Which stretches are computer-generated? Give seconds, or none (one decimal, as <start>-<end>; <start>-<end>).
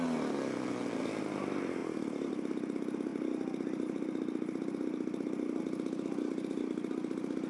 none